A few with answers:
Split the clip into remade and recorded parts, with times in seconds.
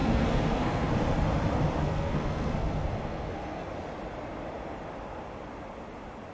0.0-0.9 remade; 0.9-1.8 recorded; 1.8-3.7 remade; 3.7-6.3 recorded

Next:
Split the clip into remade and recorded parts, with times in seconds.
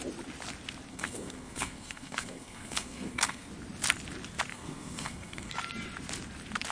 0.0-0.9 recorded; 0.9-3.5 remade; 3.5-4.5 recorded; 4.5-5.5 remade; 5.5-6.7 recorded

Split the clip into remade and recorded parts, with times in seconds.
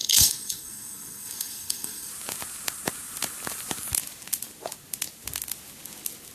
0.0-2.1 remade; 2.1-6.3 recorded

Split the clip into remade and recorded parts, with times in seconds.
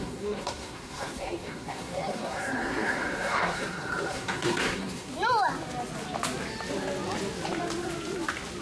0.0-5.1 remade; 5.1-8.6 recorded